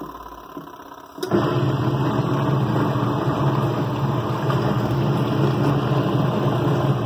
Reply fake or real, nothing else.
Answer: real